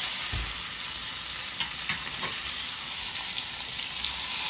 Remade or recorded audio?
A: recorded